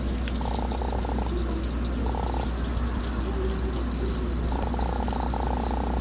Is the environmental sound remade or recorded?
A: recorded